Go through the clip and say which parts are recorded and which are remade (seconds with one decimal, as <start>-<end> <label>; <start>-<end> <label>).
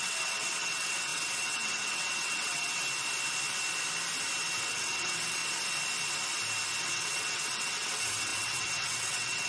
0.0-2.8 remade; 2.8-4.7 recorded; 4.7-5.4 remade; 5.4-6.8 recorded; 6.8-9.5 remade